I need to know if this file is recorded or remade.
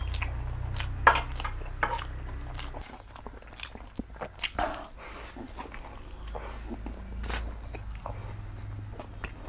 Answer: recorded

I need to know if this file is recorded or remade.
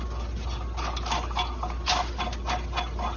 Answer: recorded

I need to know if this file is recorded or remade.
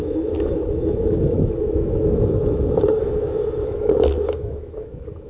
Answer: remade